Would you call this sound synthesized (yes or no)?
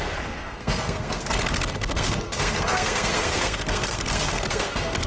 yes